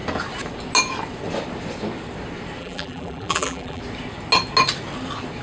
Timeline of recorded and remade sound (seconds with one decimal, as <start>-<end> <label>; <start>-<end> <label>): 0.0-2.6 recorded; 2.6-3.8 remade; 3.8-5.4 recorded